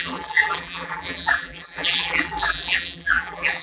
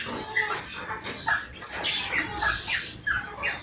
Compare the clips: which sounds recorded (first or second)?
second